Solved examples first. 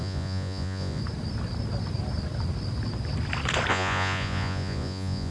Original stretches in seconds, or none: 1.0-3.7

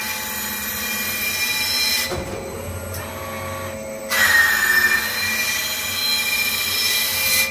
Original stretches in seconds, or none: 0.0-4.0; 4.6-7.5

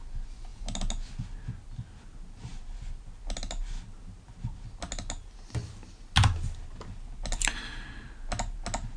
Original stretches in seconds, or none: 0.0-9.0